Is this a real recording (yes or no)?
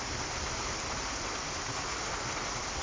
yes